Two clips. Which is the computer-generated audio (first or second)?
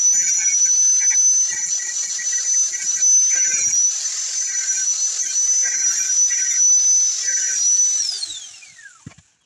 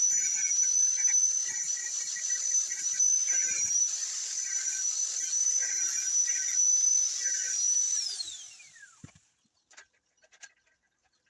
second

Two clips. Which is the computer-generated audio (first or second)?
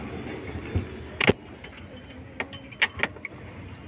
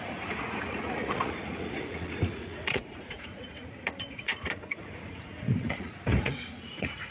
second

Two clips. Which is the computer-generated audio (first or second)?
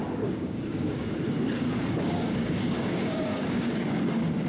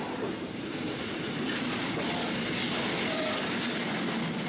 first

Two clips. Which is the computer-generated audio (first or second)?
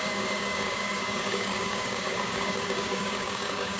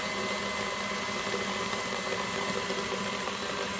first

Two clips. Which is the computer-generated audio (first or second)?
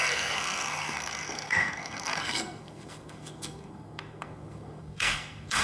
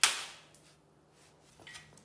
first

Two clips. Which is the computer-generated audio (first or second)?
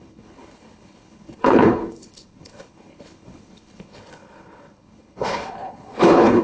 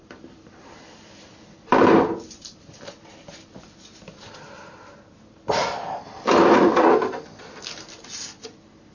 first